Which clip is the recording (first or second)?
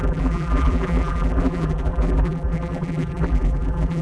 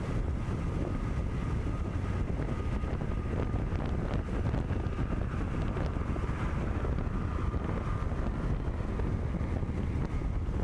second